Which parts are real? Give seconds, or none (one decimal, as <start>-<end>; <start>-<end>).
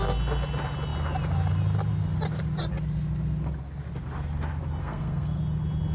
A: 0.0-4.8; 5.4-5.9